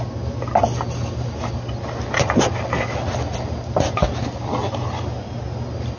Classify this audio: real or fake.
real